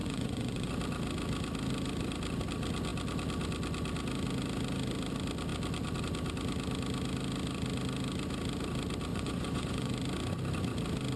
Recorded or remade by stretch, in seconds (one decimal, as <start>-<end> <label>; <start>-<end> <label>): 0.0-0.7 remade; 0.7-9.1 recorded; 9.1-9.9 remade; 9.9-11.2 recorded